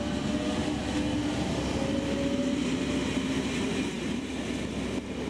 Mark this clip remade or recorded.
recorded